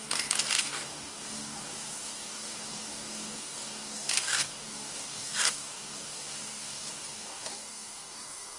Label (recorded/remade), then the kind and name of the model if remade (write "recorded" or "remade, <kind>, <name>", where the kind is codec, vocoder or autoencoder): remade, codec, DAC